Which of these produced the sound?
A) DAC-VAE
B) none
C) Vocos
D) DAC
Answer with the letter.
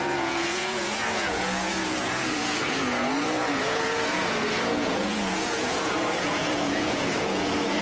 C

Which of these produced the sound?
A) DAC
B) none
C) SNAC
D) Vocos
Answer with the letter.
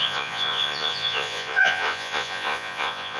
D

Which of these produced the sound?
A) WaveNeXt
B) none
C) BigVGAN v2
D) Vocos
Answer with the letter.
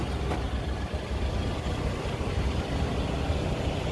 B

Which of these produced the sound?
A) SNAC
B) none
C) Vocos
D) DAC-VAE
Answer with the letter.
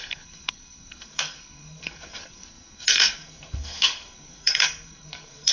A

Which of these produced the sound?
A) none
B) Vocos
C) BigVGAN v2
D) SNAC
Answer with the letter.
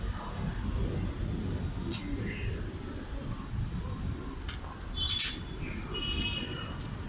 A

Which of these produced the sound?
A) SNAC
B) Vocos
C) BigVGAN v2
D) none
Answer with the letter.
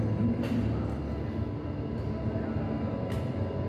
D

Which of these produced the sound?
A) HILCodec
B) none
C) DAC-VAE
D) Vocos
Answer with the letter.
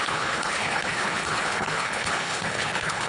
A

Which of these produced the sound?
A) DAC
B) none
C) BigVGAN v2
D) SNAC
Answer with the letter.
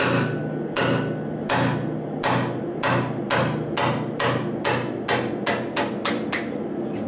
B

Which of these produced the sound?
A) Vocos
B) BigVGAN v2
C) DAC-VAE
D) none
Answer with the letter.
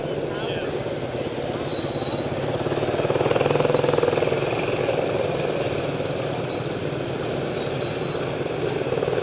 D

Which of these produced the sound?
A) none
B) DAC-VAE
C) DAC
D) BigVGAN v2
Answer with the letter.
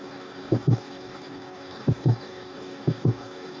C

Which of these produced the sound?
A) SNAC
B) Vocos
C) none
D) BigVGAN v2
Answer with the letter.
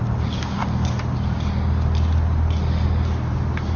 C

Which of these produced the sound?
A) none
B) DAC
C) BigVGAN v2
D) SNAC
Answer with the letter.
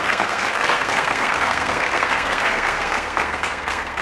D